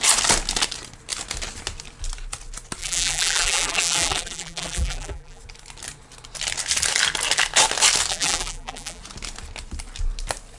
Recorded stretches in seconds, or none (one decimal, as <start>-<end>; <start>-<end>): 0.0-2.8; 5.4-8.1; 9.0-10.6